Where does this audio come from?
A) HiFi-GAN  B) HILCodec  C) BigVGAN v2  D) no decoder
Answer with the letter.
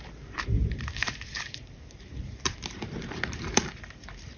C